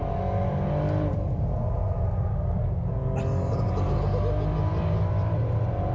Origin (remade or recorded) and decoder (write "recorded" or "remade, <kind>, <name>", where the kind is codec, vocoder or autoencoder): recorded